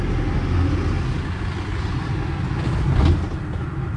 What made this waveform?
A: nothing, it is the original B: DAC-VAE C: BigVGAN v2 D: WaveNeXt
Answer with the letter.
A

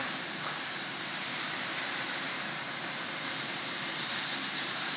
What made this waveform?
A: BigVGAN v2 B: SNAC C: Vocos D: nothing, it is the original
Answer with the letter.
A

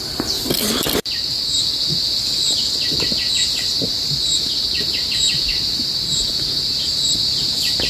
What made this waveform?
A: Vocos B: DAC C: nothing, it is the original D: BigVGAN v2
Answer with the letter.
C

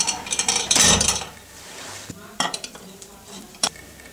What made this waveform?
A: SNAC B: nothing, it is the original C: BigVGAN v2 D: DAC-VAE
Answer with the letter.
C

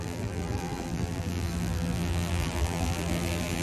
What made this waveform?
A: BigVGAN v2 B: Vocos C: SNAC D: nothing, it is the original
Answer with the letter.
A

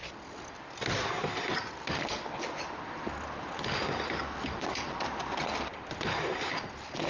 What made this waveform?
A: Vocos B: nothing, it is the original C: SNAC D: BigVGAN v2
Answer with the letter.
B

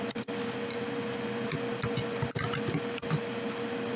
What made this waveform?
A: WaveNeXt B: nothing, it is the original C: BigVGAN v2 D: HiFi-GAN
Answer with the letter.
B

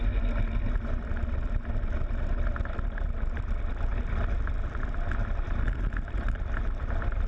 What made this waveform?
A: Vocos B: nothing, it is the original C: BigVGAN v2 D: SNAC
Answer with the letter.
C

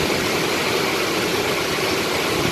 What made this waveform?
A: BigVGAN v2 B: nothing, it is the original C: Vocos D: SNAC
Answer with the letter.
B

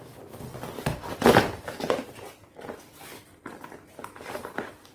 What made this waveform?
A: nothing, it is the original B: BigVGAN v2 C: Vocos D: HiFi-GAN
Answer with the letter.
B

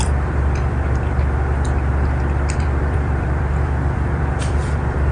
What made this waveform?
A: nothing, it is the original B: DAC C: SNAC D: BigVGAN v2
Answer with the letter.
D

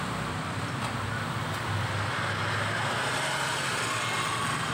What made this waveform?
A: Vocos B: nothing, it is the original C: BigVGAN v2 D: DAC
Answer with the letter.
B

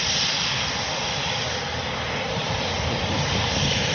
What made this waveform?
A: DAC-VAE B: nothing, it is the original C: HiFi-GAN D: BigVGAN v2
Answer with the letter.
B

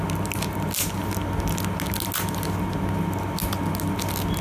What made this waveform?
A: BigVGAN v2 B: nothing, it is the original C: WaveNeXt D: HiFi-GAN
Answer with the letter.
B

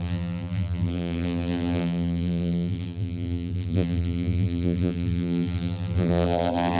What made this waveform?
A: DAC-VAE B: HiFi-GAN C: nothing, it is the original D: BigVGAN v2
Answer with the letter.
D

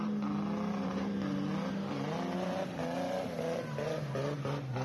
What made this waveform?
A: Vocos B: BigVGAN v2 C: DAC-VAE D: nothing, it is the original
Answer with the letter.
D